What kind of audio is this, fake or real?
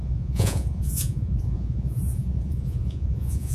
fake